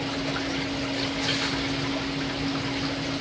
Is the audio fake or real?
real